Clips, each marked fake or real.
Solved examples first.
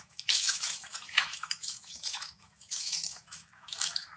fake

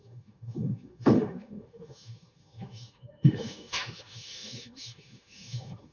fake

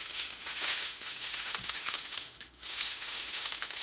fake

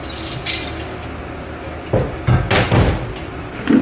real